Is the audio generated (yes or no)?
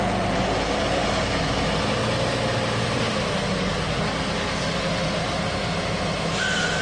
no